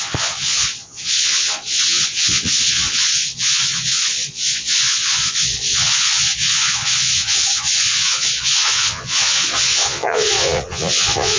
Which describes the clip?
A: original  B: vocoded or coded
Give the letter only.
B